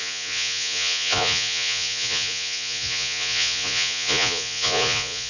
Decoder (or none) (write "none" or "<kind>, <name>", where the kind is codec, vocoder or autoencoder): vocoder, Vocos